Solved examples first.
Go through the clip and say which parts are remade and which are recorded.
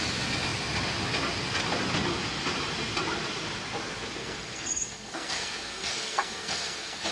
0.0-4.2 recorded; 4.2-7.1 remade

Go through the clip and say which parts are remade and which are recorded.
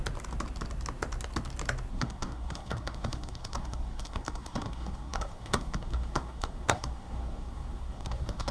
0.0-1.9 recorded; 1.9-8.5 remade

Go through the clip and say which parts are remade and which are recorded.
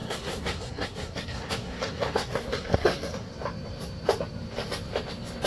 0.0-3.3 remade; 3.3-5.5 recorded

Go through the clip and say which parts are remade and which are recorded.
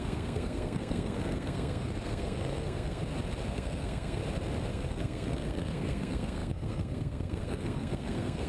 0.0-3.0 remade; 3.0-3.5 recorded; 3.5-4.2 remade; 4.2-4.7 recorded; 4.7-8.5 remade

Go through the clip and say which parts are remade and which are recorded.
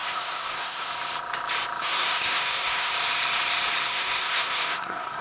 0.0-0.9 remade; 0.9-1.8 recorded; 1.8-2.9 remade; 2.9-3.9 recorded; 3.9-5.2 remade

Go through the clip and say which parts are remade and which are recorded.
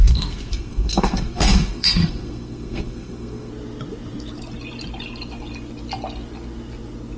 0.0-3.5 remade; 3.5-7.2 recorded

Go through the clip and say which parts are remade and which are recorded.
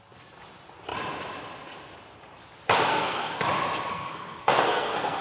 0.0-2.9 recorded; 2.9-3.4 remade; 3.4-3.9 recorded; 3.9-5.2 remade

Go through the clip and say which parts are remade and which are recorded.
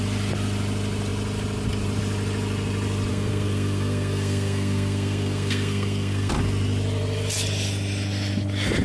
0.0-3.1 recorded; 3.1-6.3 remade; 6.3-8.8 recorded